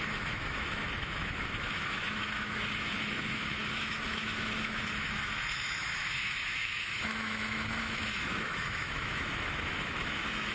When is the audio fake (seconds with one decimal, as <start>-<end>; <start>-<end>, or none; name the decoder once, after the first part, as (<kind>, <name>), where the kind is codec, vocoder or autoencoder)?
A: 0.0-10.5 (autoencoder, DAC-VAE)